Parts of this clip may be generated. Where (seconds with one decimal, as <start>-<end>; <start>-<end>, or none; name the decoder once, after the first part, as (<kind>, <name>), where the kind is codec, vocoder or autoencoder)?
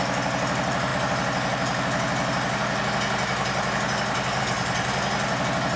none